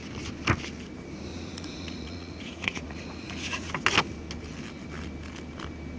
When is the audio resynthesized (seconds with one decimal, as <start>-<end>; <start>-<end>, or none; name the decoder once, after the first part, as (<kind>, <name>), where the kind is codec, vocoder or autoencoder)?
1.3-3.7 (vocoder, Vocos)